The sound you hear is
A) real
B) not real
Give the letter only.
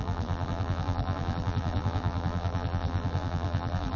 B